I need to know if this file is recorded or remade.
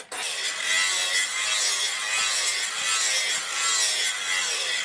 recorded